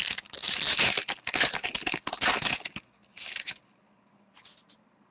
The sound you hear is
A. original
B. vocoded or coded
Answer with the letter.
A